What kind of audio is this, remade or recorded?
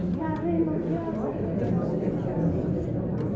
recorded